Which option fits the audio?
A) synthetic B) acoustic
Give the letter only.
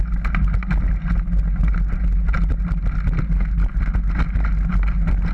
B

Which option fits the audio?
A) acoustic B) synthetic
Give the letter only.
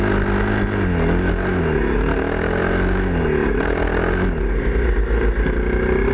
A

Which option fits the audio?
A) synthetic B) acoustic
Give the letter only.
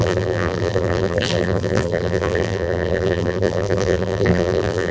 A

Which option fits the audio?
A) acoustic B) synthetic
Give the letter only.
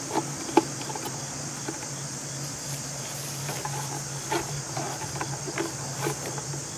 A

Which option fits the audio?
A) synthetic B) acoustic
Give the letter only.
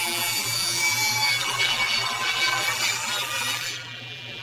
A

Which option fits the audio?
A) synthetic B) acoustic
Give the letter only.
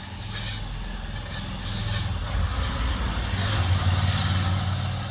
B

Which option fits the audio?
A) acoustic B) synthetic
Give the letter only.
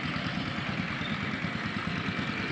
A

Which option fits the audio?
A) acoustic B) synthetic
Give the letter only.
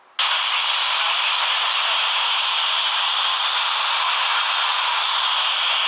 A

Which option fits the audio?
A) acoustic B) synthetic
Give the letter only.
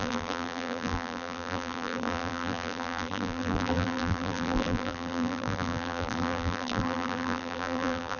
B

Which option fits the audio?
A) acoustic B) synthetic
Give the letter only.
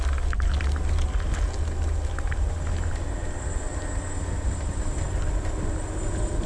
A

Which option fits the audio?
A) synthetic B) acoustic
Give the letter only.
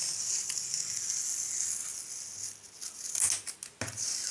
B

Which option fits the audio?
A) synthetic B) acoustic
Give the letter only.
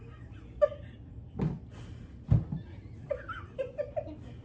B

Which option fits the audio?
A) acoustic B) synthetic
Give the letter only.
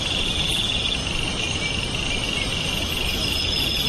A